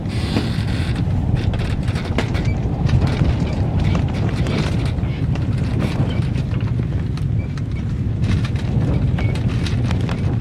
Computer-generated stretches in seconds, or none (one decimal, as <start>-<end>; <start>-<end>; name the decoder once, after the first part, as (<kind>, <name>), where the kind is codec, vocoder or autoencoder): 0.0-4.4 (vocoder, BigVGAN v2); 5.7-8.7